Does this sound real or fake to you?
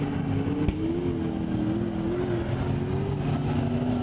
real